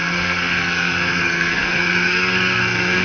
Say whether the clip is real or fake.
fake